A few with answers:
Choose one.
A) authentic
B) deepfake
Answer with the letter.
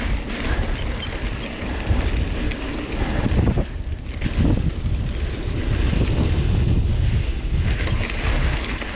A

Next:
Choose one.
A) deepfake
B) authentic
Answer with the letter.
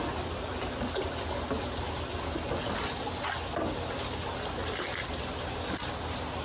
B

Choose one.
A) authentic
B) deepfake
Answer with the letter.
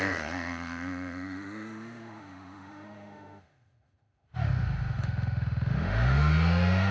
B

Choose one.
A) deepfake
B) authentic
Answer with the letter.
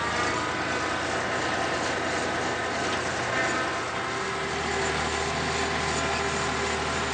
B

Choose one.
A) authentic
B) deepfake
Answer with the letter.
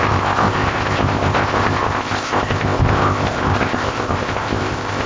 B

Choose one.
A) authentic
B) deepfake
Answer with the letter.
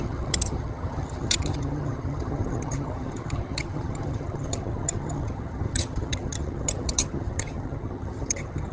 B